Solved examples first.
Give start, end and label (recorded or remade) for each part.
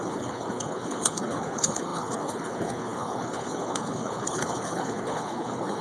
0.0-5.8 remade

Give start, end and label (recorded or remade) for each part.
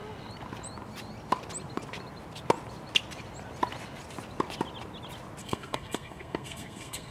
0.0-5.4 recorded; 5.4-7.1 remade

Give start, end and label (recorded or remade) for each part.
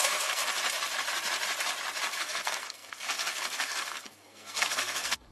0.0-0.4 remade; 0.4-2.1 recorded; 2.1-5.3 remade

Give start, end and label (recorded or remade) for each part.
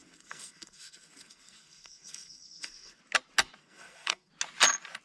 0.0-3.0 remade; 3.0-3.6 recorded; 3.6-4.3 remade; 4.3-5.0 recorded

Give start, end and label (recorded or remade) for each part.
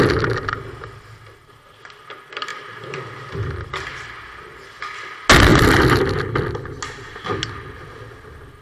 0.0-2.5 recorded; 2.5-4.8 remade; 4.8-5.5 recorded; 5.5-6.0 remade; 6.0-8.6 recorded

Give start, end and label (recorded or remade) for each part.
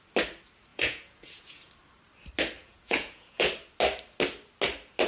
0.0-0.7 recorded; 0.7-1.7 remade; 1.7-2.6 recorded; 2.6-3.5 remade; 3.5-5.1 recorded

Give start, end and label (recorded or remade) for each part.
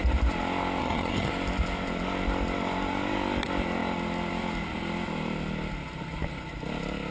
0.0-0.8 recorded; 0.8-1.3 remade; 1.3-7.1 recorded